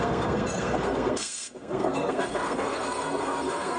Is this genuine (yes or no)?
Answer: no